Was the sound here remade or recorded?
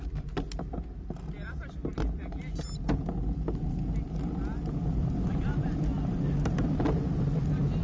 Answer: recorded